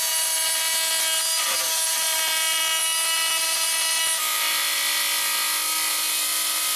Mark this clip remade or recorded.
recorded